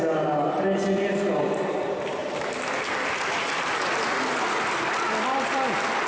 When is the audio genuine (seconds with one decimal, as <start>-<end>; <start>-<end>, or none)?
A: 0.0-6.1